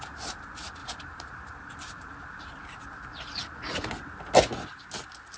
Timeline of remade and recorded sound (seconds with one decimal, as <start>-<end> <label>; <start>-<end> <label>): 0.0-0.8 recorded; 0.8-2.6 remade; 2.6-3.1 recorded; 3.1-3.9 remade; 3.9-5.4 recorded